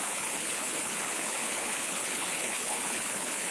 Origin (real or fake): fake